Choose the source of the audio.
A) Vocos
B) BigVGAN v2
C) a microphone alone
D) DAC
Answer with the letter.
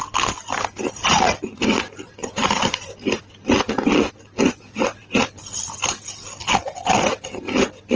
C